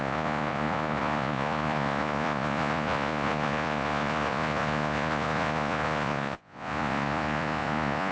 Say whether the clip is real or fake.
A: fake